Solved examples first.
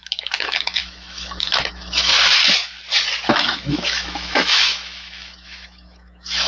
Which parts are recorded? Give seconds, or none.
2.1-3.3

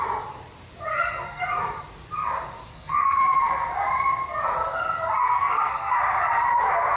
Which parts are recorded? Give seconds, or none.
0.0-0.9; 1.4-2.7; 3.7-5.2; 6.0-7.0

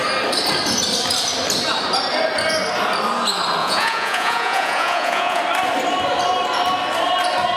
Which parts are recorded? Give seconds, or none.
0.0-3.6; 5.4-7.6